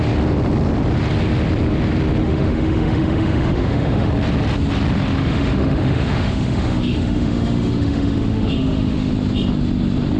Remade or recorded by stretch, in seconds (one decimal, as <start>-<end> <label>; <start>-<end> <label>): 0.0-2.2 recorded; 2.2-4.1 remade; 4.1-5.2 recorded; 5.2-9.1 remade; 9.1-10.2 recorded